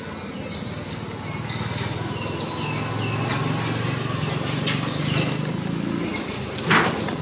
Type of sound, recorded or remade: recorded